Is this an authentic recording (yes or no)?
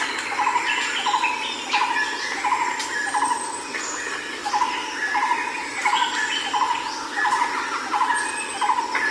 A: yes